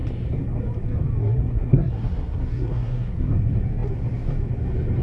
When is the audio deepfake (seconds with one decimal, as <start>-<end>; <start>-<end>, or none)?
1.2-3.3